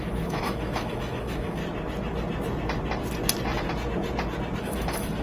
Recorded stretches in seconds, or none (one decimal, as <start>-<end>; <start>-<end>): 1.6-4.6